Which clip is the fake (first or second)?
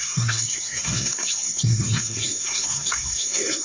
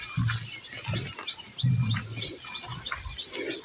first